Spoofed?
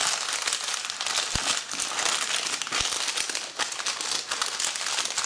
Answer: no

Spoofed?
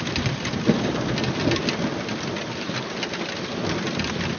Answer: no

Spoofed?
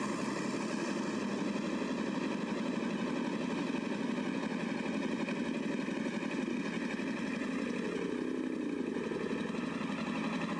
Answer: no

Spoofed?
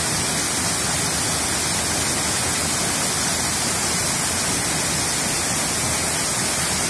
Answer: no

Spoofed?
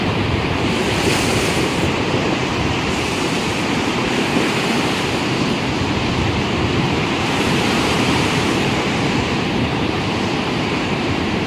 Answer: yes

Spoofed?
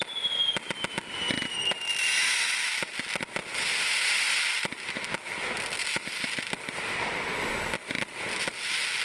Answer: no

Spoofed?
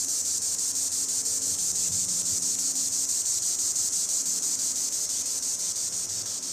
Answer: no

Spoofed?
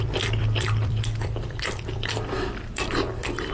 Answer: yes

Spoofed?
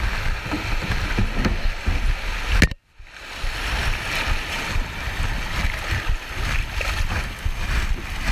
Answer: no